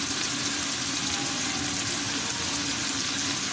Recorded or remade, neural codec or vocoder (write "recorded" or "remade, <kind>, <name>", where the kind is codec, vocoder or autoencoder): recorded